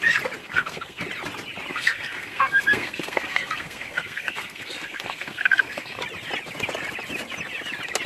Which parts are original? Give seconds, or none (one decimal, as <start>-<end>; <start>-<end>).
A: 0.0-0.4; 1.0-1.7; 6.0-8.1